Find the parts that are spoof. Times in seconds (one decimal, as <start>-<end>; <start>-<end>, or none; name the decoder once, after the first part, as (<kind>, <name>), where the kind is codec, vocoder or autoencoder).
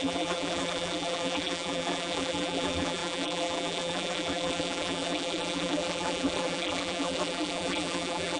0.0-8.4 (vocoder, BigVGAN v2)